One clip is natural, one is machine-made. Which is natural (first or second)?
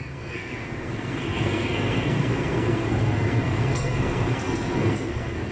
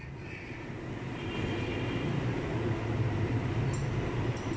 second